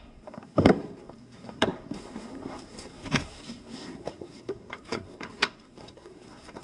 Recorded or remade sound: remade